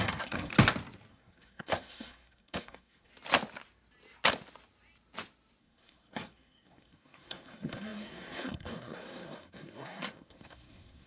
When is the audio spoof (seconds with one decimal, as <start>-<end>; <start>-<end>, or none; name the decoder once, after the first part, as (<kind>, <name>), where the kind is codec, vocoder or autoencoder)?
0.0-0.5 (codec, SNAC); 1.1-3.1; 5.6-11.1